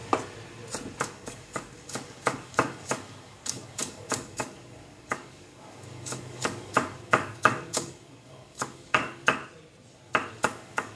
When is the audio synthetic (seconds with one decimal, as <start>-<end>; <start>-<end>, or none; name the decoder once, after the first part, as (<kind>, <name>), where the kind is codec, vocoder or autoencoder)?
1.0-9.4 (codec, DAC); 10.4-11.0

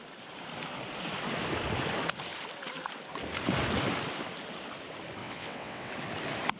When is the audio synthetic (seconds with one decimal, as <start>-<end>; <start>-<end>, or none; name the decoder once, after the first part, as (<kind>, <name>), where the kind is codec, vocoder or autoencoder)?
5.2-5.9 (vocoder, WaveNeXt)